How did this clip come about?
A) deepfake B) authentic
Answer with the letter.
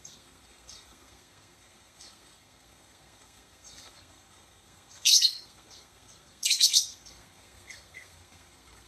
A